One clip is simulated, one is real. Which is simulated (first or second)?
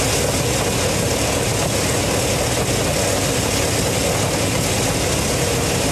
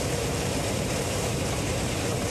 second